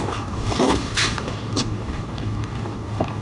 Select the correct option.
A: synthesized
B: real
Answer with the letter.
A